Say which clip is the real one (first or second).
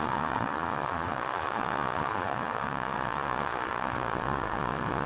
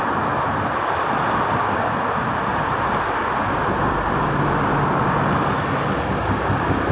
second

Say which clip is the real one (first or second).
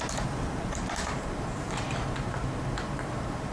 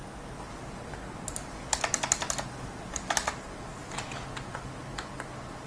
second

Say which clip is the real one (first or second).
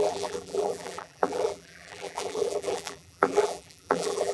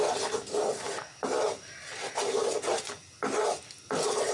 second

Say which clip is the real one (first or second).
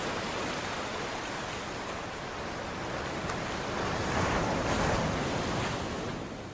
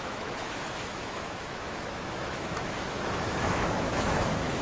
first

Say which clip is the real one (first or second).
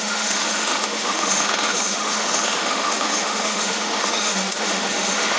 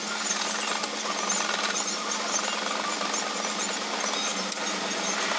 second